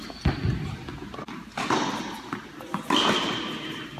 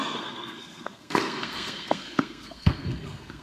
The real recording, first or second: first